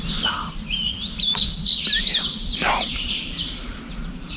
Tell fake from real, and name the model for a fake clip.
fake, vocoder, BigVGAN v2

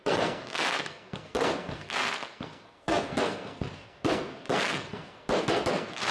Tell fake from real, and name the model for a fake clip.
fake, codec, SNAC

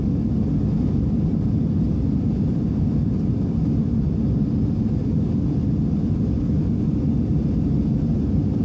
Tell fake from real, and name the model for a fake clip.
real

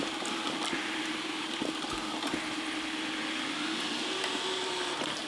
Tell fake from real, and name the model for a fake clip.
real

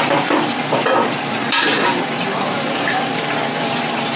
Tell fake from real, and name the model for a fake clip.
fake, vocoder, BigVGAN v2